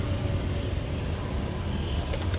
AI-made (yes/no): no